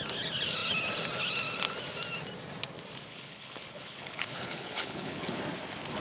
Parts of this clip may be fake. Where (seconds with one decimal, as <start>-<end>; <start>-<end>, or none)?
3.1-5.4